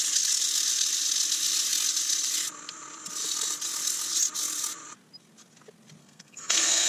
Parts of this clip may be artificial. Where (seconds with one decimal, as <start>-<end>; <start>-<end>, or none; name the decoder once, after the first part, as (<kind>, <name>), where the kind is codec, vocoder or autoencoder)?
6.0-6.9 (codec, SNAC)